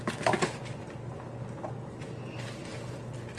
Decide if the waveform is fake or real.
real